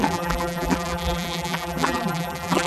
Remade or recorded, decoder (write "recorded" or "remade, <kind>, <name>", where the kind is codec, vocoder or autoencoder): remade, vocoder, BigVGAN v2